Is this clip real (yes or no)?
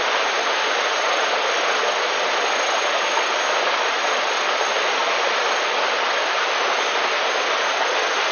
yes